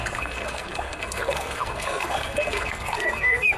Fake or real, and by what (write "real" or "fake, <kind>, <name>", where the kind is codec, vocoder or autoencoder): fake, codec, SNAC